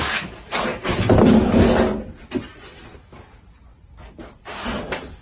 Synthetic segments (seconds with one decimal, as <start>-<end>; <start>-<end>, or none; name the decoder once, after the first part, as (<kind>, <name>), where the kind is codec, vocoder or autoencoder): none